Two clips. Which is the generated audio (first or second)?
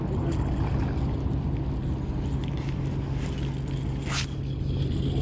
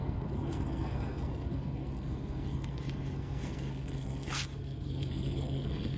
second